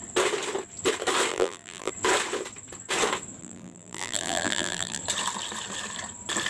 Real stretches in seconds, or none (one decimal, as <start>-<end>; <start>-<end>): 0.0-1.3; 1.9-3.4; 5.0-6.5